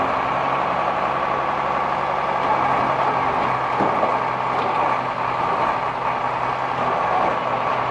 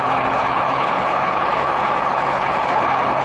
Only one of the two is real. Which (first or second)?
first